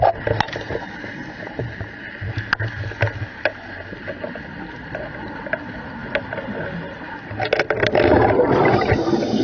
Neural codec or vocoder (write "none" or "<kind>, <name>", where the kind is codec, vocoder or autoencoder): none